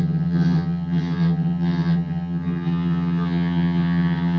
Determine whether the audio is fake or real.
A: fake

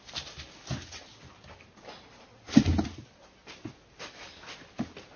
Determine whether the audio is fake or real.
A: real